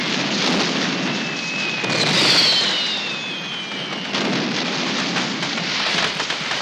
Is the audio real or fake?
real